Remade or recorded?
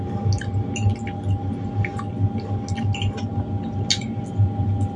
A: recorded